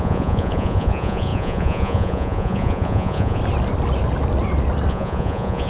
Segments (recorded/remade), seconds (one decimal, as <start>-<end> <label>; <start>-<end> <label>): 0.0-3.4 remade; 3.4-4.9 recorded; 4.9-5.7 remade